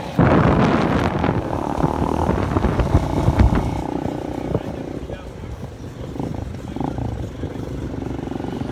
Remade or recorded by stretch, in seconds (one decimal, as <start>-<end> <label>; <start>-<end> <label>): 0.0-1.2 recorded; 1.2-2.3 remade; 2.3-8.7 recorded